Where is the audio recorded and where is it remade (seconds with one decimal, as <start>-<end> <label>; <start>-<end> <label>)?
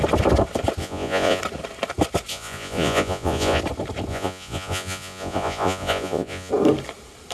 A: 0.0-0.8 recorded; 0.8-1.4 remade; 1.4-2.3 recorded; 2.3-3.6 remade; 3.6-4.1 recorded; 4.1-6.5 remade; 6.5-7.3 recorded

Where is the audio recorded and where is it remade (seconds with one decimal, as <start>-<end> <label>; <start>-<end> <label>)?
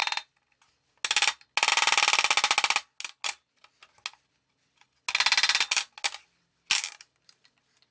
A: 0.0-7.9 recorded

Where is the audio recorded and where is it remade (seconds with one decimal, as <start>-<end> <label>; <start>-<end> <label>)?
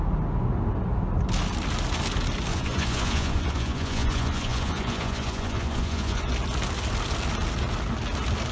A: 0.0-2.5 recorded; 2.5-6.3 remade; 6.3-8.5 recorded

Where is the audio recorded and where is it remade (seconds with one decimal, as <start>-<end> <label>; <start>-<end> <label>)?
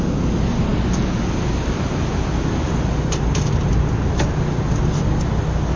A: 0.0-5.8 recorded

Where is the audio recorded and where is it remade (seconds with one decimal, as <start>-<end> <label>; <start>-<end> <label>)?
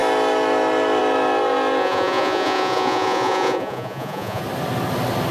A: 0.0-1.8 recorded; 1.8-4.4 remade; 4.4-5.3 recorded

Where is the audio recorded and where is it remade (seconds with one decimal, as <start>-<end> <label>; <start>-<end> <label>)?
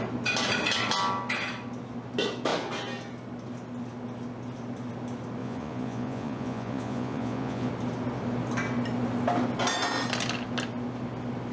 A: 0.0-5.4 recorded; 5.4-7.7 remade; 7.7-11.5 recorded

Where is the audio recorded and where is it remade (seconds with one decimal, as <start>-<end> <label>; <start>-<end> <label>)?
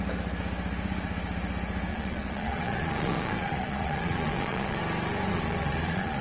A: 0.0-1.9 recorded; 1.9-4.8 remade; 4.8-5.3 recorded; 5.3-6.2 remade